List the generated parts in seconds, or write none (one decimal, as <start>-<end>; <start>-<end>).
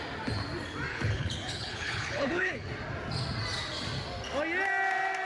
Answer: 0.9-2.7